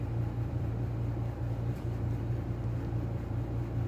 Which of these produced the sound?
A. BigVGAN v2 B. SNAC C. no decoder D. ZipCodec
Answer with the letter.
A